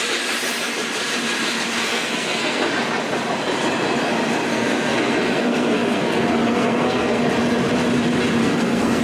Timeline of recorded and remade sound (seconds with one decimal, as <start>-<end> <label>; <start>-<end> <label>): 0.0-1.8 recorded; 1.8-2.7 remade; 2.7-4.5 recorded; 4.5-7.2 remade; 7.2-8.4 recorded; 8.4-9.0 remade